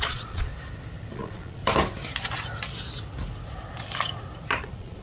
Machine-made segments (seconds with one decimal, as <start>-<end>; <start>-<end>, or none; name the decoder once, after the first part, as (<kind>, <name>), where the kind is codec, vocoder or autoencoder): 0.0-0.5 (vocoder, Vocos); 1.1-1.6; 4.6-5.0